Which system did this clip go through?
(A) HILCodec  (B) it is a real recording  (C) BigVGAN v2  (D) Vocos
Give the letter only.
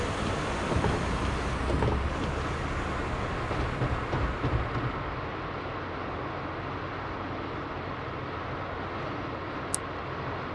B